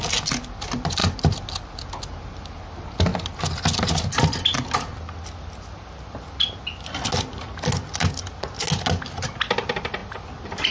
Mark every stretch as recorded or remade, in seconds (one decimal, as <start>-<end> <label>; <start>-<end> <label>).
0.0-10.7 recorded